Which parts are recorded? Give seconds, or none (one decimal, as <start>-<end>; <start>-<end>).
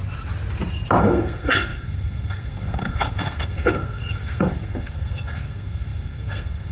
0.0-1.0